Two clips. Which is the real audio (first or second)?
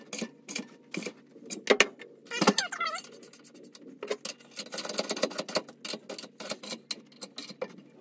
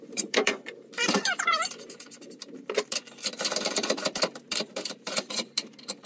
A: first